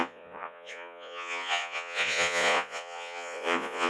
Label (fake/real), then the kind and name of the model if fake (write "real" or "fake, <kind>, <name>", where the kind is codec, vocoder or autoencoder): fake, vocoder, Vocos